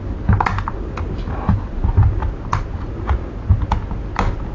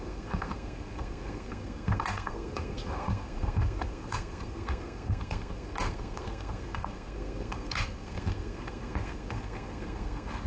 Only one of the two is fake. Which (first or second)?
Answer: second